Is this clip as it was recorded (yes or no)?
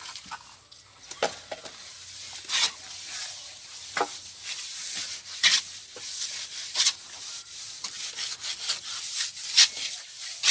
yes